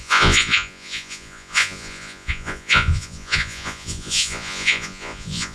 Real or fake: fake